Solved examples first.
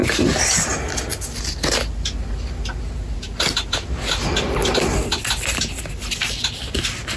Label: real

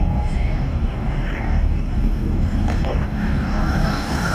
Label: fake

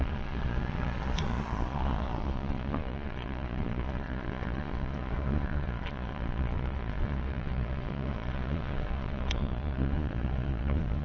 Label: fake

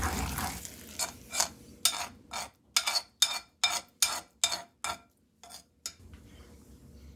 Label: real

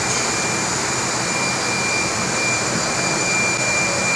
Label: real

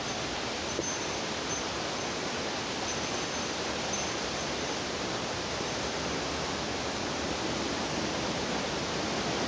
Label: real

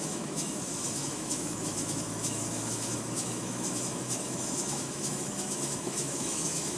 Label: fake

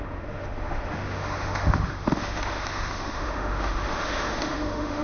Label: fake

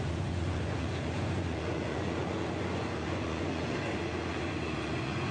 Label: fake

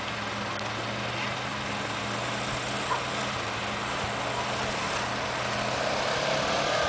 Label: real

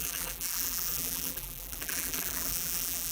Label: fake